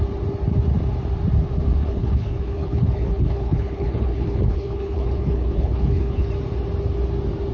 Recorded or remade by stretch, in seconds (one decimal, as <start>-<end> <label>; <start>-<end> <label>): 0.0-1.8 recorded; 1.8-6.3 remade; 6.3-7.5 recorded